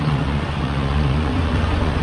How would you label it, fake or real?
fake